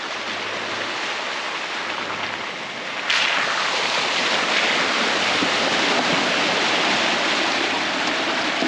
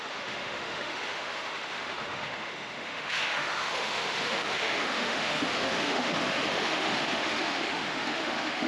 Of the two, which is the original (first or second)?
first